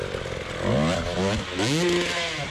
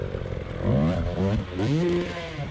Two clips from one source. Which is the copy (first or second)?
second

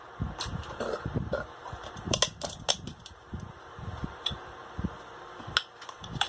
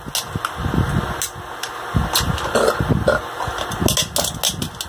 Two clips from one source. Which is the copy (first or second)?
first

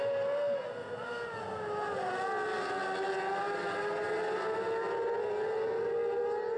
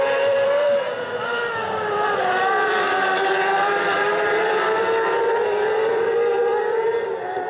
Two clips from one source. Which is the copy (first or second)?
second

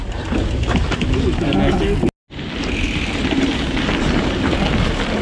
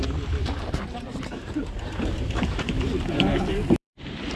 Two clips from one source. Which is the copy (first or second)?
second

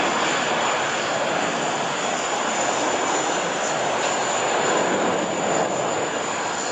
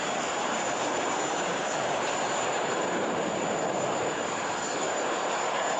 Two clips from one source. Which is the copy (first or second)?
second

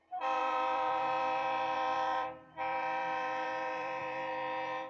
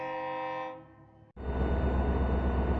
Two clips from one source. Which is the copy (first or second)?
first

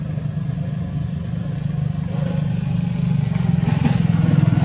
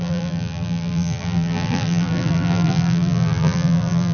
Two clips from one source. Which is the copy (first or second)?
second